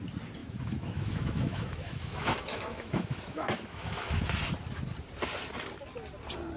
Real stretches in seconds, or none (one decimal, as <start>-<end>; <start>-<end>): 0.0-0.4; 4.2-6.6